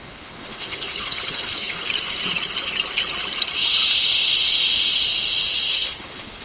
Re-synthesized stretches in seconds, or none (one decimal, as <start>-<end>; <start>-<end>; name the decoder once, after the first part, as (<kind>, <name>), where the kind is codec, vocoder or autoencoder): 0.0-1.9 (codec, HILCodec); 5.7-6.4